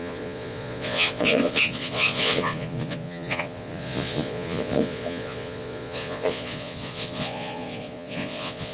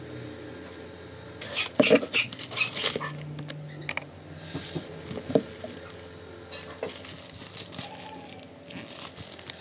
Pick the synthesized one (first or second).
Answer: first